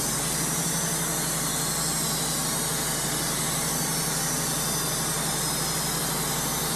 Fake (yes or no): no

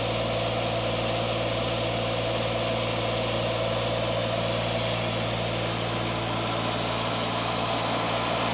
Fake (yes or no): no